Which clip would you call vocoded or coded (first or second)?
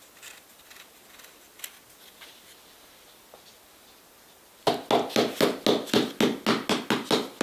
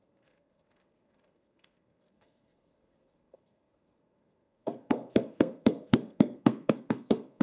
second